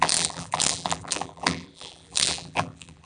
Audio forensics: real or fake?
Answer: fake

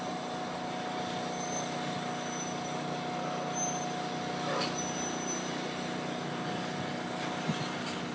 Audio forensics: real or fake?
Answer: real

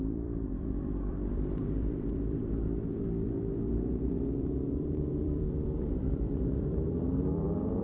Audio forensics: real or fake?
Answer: fake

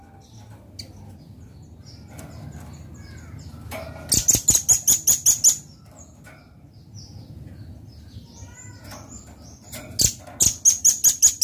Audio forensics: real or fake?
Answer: real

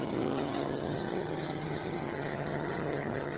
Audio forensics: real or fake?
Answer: fake